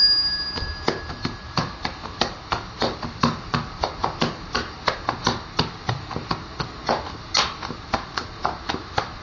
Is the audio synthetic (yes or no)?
no